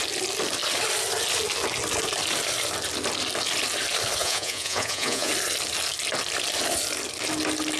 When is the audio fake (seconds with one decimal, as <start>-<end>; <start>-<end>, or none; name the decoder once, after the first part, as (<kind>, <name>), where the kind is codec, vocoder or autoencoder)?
4.2-5.3 (vocoder, Vocos)